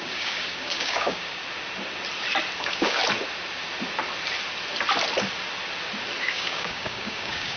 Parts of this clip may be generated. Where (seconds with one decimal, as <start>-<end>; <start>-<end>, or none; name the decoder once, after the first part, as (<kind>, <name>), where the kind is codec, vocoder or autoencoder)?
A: 0.0-1.4 (codec, DAC); 2.6-3.0; 6.2-7.6